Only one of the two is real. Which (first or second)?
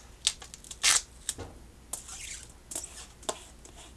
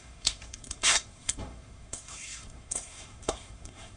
first